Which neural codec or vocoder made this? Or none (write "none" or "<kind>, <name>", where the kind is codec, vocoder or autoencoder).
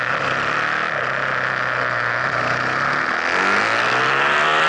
none